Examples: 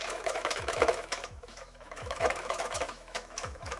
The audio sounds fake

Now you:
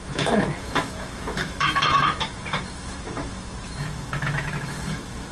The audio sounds fake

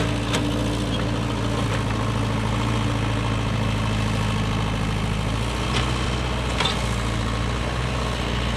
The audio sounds real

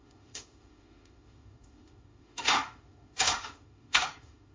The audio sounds fake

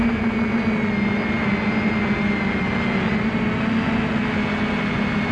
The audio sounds real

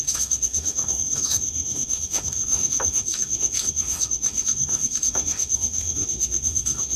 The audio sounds fake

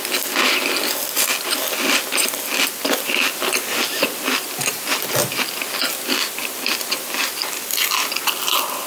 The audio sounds real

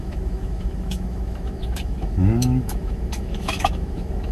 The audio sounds fake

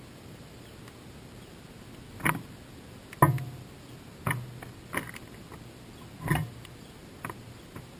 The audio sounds real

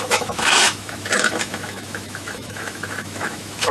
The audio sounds fake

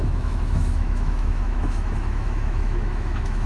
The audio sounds fake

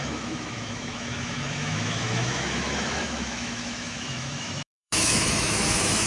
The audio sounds fake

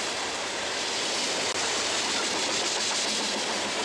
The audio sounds real